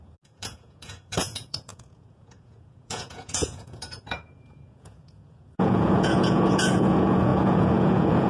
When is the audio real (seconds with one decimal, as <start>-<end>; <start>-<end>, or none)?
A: none